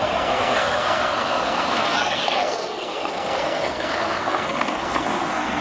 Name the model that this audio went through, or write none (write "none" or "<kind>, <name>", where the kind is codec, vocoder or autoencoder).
codec, SNAC